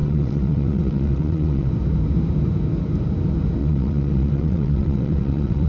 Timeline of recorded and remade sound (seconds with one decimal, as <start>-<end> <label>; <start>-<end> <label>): 0.0-1.7 remade; 1.7-3.6 recorded; 3.6-5.7 remade